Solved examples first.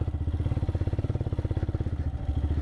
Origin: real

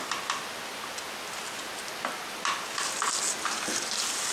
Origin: real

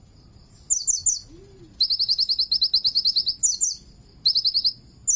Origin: real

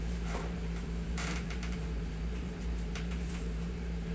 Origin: fake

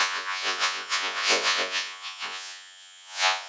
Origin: fake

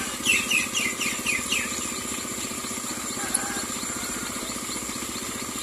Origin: real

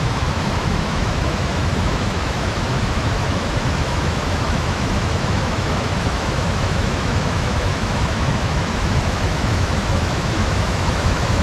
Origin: fake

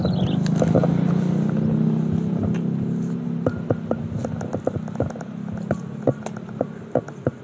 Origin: real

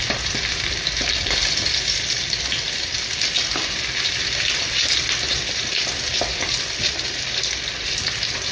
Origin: fake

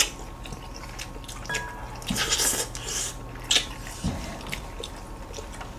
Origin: real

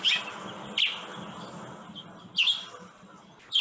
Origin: real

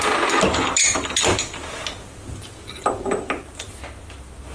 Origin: real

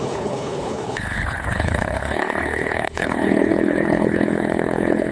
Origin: fake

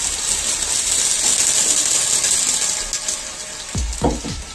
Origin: real